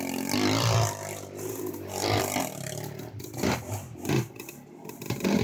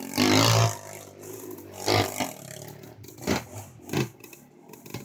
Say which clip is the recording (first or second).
second